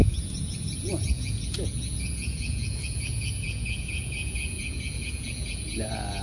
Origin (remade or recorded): remade